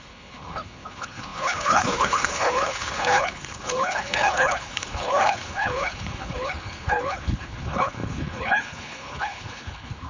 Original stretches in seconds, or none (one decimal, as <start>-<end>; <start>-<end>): none